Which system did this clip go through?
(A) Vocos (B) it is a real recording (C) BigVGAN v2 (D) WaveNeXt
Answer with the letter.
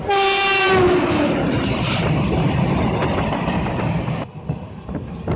B